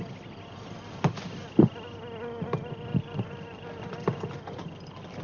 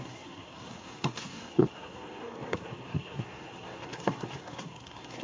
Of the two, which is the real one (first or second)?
first